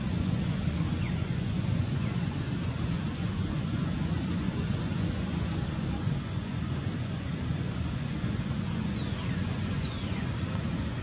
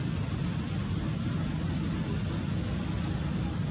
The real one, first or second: second